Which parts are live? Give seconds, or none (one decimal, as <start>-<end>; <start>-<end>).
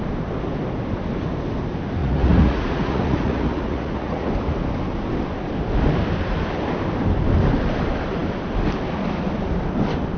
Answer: 0.0-2.0; 4.3-10.2